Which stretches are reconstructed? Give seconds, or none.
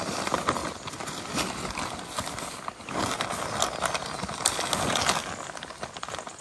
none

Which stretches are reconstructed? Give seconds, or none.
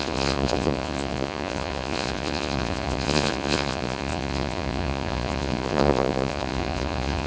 0.0-7.3 (vocoder, Vocos)